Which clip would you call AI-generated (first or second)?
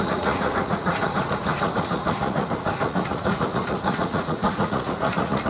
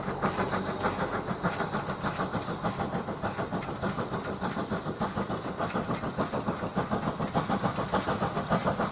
first